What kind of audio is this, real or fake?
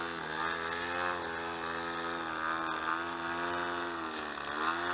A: real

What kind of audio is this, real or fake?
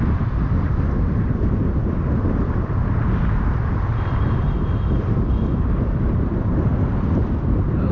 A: fake